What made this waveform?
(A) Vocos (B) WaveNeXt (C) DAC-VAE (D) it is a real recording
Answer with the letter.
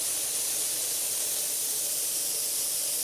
D